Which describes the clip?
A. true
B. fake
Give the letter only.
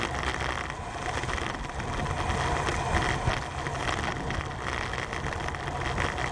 A